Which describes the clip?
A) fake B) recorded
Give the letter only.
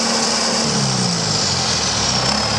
B